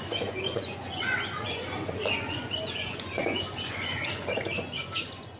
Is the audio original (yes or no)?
no